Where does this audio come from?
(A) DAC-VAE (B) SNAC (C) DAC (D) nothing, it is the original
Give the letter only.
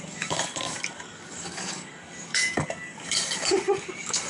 C